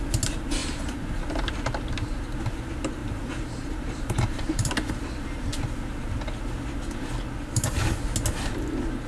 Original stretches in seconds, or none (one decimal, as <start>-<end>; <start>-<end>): 0.0-0.6; 1.2-3.0; 4.7-9.1